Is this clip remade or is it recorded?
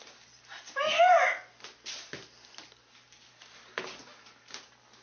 recorded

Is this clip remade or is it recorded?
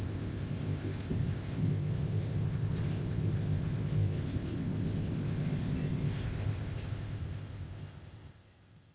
remade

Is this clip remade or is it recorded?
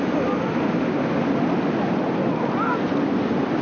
recorded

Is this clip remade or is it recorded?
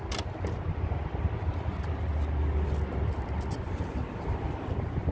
recorded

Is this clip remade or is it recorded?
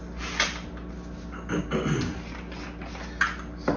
recorded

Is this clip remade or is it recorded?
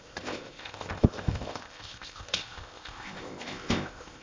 remade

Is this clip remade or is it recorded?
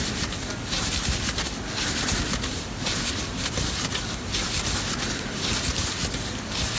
recorded